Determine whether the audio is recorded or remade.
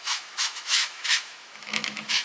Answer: remade